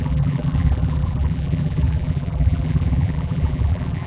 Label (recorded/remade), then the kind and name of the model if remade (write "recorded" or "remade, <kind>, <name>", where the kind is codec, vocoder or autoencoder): remade, vocoder, BigVGAN v2